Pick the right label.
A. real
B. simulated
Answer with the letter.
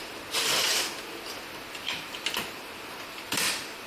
B